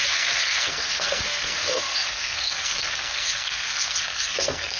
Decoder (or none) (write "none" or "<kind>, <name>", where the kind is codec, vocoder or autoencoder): codec, SNAC